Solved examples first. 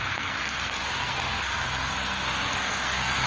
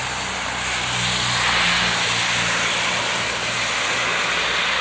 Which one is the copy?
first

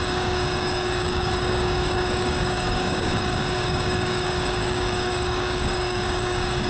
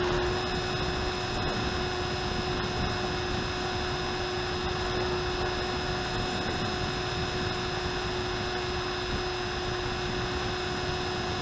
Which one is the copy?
first